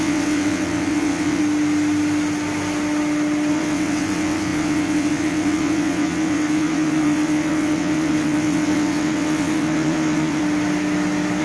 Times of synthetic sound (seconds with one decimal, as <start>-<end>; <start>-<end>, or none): 0.0-1.4; 3.5-10.4